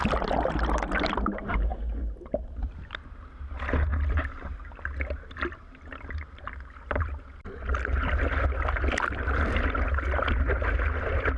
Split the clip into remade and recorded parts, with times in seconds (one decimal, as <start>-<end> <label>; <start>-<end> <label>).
0.0-11.4 recorded